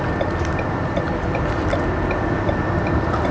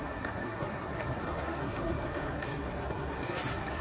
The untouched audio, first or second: first